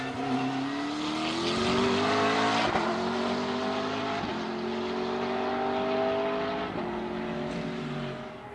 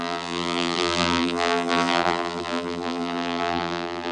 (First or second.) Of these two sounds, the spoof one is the second